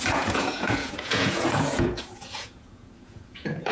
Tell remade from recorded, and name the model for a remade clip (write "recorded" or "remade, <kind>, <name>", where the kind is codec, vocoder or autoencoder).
remade, vocoder, Vocos